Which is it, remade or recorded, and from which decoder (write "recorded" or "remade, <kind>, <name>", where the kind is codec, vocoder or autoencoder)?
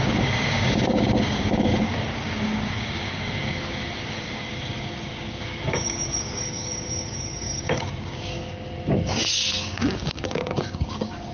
remade, codec, DAC